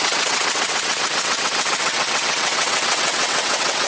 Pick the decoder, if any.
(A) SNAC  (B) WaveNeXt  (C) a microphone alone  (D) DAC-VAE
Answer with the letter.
B